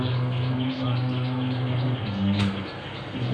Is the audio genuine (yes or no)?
no